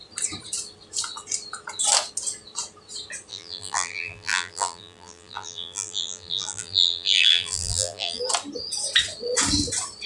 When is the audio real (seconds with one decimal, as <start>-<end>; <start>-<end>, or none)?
0.0-3.3; 8.2-10.1